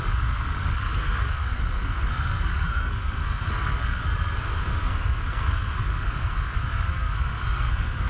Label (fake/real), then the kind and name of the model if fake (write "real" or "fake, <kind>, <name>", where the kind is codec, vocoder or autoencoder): fake, codec, SNAC